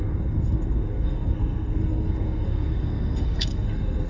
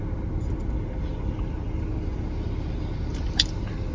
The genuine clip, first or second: second